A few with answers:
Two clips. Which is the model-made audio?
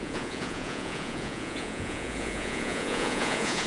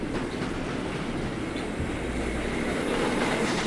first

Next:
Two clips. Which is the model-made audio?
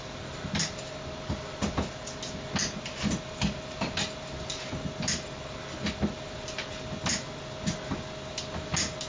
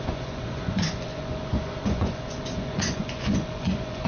second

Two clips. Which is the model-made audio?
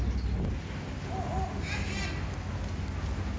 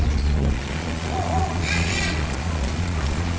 second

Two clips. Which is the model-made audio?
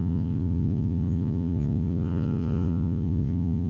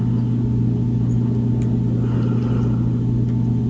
first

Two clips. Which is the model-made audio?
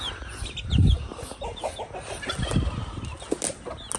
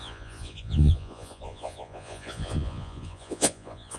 second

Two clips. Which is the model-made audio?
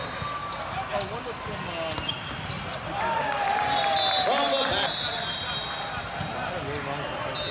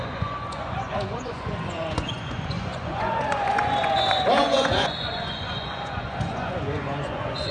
second